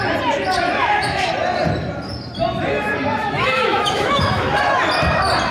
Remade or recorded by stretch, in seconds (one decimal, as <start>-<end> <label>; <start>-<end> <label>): 0.0-0.8 recorded; 0.8-1.3 remade; 1.3-3.2 recorded; 3.2-4.6 remade; 4.6-5.5 recorded